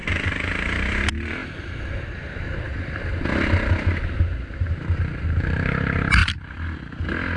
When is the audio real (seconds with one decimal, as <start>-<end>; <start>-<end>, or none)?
0.0-6.2; 6.9-7.4